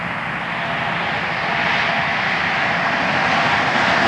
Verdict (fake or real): real